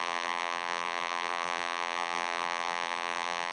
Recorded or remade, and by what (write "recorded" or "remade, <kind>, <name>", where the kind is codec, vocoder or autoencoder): remade, vocoder, BigVGAN v2